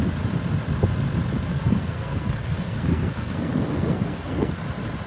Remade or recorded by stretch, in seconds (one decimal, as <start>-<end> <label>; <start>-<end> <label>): 0.0-1.5 recorded; 1.5-4.6 remade; 4.6-5.1 recorded